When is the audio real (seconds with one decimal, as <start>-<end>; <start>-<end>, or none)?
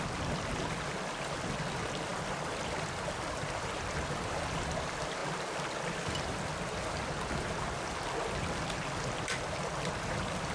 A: 0.0-10.5